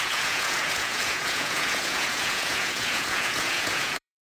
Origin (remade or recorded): remade